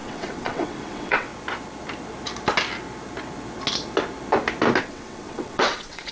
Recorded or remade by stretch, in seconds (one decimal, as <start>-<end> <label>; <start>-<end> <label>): 0.0-1.3 remade; 1.3-4.8 recorded; 4.8-6.1 remade